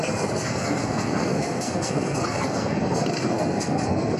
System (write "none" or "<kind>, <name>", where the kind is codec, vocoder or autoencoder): codec, SNAC